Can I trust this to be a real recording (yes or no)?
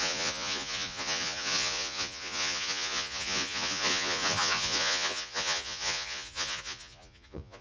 no